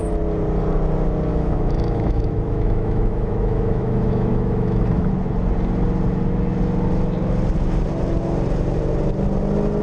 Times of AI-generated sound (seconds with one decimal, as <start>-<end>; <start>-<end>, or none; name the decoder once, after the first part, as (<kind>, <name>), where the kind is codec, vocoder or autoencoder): 1.3-5.1 (autoencoder, DAC-VAE)